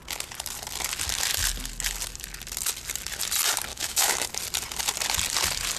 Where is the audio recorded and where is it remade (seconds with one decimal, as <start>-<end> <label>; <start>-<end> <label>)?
0.0-3.7 recorded; 3.7-4.3 remade; 4.3-5.8 recorded